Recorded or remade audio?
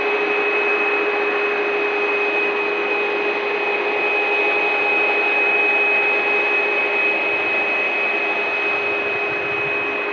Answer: recorded